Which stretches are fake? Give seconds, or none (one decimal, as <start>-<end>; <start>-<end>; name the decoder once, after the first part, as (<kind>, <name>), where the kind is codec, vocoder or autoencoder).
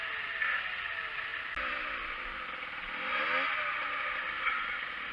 none